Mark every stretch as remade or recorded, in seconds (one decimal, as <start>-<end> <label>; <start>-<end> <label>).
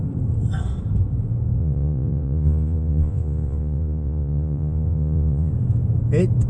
0.0-1.6 recorded; 1.6-5.5 remade; 5.5-6.5 recorded